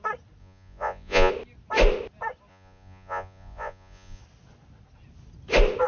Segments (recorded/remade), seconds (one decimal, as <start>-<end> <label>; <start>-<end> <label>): 0.0-0.4 recorded; 0.4-1.3 remade; 1.3-2.5 recorded; 2.5-4.2 remade; 4.2-5.9 recorded